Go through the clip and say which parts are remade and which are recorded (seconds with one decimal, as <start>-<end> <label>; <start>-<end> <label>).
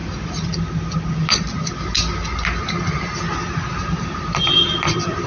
0.0-5.3 recorded